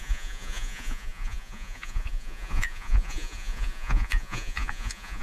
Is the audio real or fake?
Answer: fake